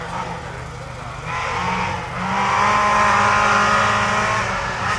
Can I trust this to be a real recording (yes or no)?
yes